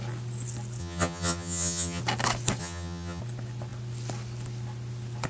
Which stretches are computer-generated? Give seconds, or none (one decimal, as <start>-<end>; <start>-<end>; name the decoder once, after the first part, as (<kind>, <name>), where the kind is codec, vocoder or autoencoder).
0.8-2.0 (vocoder, HiFi-GAN); 2.6-3.2